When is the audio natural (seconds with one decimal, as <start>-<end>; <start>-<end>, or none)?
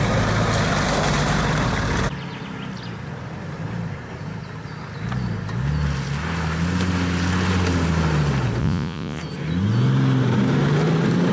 0.0-8.6; 9.2-11.3